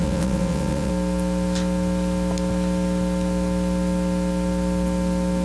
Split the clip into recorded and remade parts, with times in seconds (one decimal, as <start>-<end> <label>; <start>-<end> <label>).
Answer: 0.0-0.9 remade; 0.9-5.4 recorded